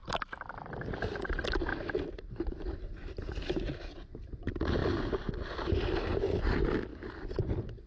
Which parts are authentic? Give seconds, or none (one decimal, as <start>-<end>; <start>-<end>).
0.0-1.7; 3.5-4.8; 5.3-6.9; 7.5-7.9